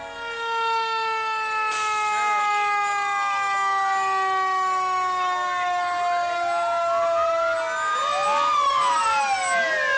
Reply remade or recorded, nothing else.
recorded